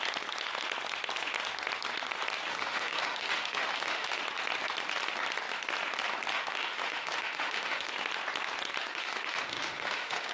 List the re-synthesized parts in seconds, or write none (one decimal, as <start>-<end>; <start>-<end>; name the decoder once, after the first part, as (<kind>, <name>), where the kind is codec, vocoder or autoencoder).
2.5-4.2 (autoencoder, DAC-VAE); 6.3-7.9; 8.8-10.3